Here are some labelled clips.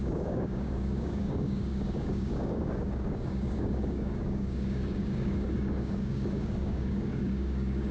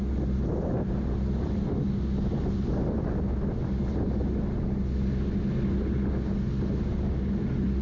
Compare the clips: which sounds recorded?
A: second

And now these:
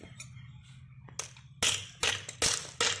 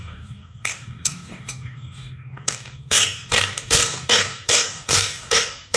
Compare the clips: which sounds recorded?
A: first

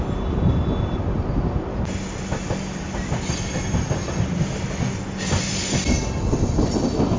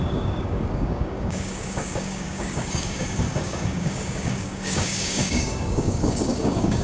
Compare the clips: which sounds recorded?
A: first